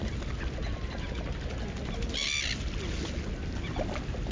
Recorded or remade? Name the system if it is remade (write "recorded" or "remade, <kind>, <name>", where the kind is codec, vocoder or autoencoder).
recorded